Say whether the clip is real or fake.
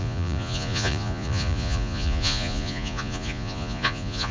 fake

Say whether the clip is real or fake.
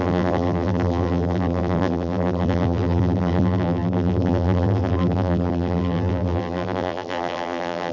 fake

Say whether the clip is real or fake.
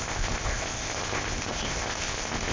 fake